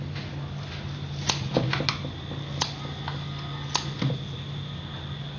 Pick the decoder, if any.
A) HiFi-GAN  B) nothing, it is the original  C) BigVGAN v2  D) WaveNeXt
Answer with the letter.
B